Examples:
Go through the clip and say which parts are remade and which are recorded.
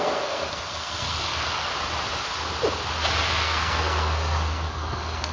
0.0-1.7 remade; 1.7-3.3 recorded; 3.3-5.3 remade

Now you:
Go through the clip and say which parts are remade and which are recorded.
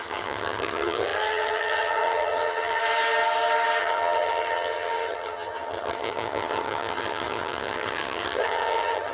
0.0-2.8 remade; 2.8-3.8 recorded; 3.8-9.1 remade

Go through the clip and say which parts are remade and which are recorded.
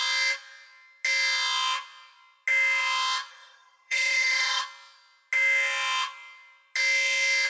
0.0-3.3 recorded; 3.3-4.6 remade; 4.6-7.5 recorded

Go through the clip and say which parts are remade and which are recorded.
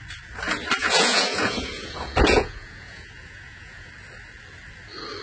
0.0-0.8 recorded; 0.8-3.9 remade; 3.9-5.2 recorded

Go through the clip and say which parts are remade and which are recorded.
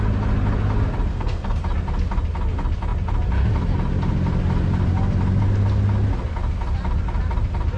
0.0-1.1 recorded; 1.1-1.6 remade; 1.6-7.8 recorded